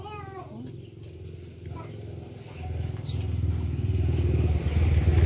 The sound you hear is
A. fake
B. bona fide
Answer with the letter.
B